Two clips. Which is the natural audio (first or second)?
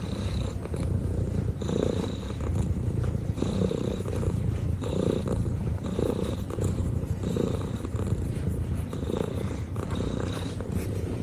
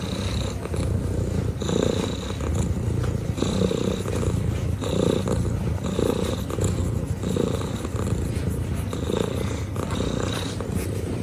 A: second